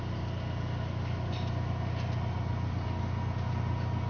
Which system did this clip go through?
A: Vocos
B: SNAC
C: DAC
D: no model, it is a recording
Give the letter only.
D